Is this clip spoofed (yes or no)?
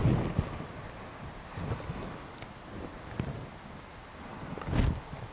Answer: no